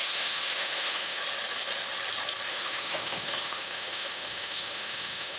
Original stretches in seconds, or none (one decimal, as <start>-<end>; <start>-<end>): 1.2-2.5